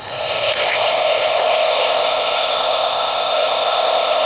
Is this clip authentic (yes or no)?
no